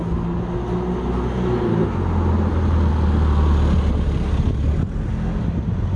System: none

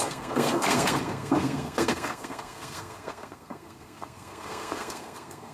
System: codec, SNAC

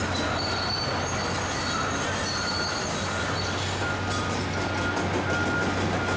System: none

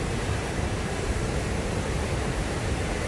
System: vocoder, BigVGAN v2